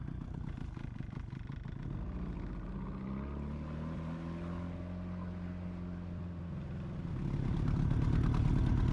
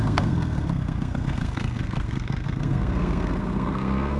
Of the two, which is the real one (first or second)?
first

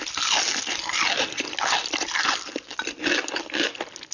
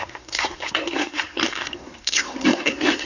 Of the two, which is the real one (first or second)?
first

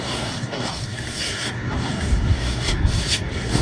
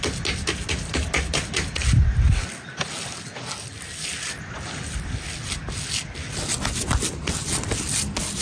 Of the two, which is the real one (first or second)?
second